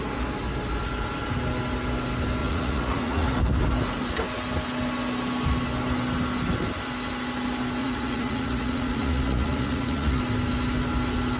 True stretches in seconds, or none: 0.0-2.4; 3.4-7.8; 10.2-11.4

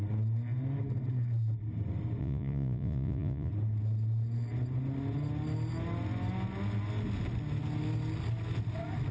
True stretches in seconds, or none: 0.0-2.2; 3.5-9.1

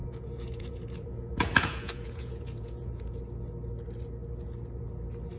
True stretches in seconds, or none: 3.2-5.4

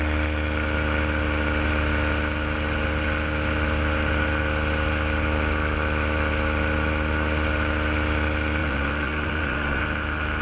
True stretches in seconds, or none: 0.0-8.6; 9.8-10.4

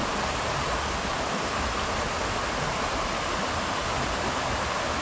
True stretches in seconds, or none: 0.0-5.0

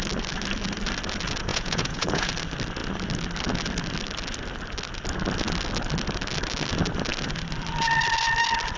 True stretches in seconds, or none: 0.0-1.5; 2.3-8.8